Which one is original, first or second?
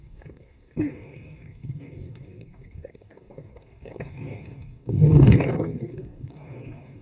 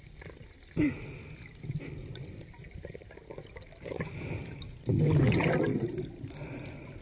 second